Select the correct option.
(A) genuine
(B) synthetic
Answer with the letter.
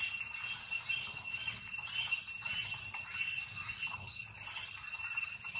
A